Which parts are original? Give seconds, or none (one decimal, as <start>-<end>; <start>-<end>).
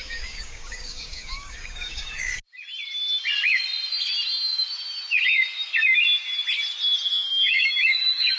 2.3-7.1